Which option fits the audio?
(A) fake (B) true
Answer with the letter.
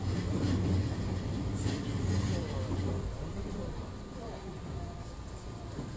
A